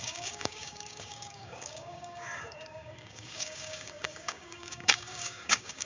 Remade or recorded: remade